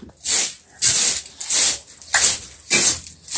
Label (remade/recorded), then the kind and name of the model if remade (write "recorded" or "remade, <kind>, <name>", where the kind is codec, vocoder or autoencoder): recorded